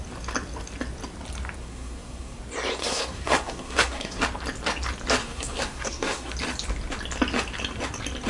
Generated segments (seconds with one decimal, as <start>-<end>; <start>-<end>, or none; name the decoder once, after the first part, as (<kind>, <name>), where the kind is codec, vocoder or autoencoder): 1.6-2.4 (codec, SNAC); 2.8-4.2; 5.2-6.3